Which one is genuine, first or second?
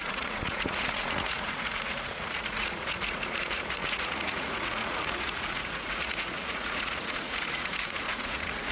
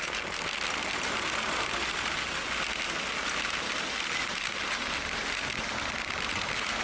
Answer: second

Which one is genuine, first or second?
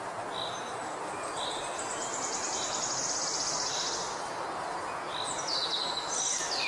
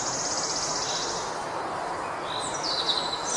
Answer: first